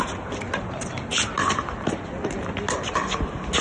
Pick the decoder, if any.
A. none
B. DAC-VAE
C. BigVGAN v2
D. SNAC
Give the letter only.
A